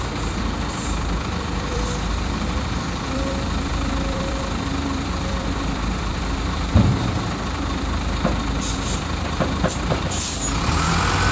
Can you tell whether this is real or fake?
fake